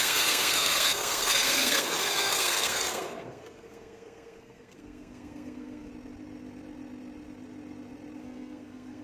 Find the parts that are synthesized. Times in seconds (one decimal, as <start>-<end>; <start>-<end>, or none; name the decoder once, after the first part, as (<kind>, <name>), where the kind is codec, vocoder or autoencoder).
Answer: 0.0-5.9 (codec, SNAC); 8.2-9.0